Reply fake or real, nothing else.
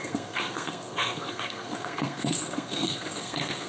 fake